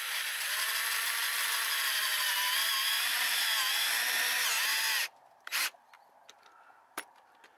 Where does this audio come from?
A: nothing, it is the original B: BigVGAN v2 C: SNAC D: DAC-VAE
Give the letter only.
B